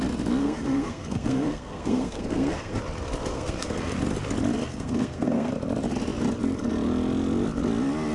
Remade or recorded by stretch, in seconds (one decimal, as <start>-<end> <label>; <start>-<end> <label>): 0.0-0.4 recorded; 0.4-2.8 remade; 2.8-3.3 recorded; 3.3-3.9 remade; 3.9-4.7 recorded; 4.7-5.5 remade; 5.5-8.1 recorded